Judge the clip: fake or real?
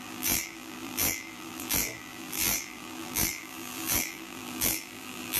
fake